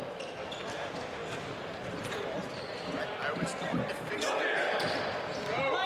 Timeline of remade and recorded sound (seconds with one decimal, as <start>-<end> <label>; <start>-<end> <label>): 0.0-5.9 recorded